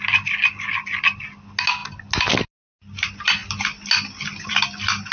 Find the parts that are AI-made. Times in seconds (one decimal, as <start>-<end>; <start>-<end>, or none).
none